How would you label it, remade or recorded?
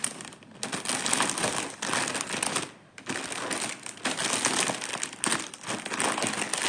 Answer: recorded